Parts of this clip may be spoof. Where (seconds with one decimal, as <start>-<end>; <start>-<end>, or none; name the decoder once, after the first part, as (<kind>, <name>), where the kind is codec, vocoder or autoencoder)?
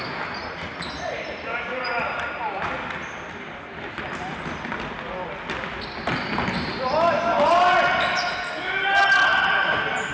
none